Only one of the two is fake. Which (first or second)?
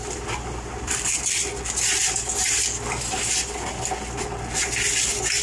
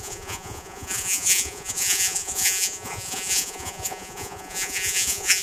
second